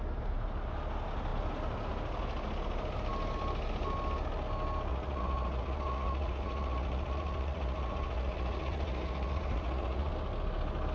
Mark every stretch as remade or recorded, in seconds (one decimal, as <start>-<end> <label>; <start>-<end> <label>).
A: 0.0-4.9 recorded; 4.9-10.1 remade; 10.1-10.9 recorded